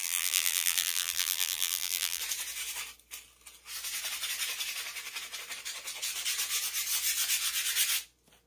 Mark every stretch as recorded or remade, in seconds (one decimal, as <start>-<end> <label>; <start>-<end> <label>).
0.0-2.2 remade; 2.2-8.5 recorded